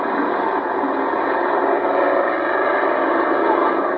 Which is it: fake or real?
real